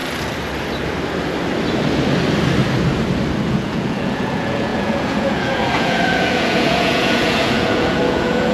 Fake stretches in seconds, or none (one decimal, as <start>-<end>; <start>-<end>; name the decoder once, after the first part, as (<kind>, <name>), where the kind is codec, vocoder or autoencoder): 3.5-8.5 (vocoder, Vocos)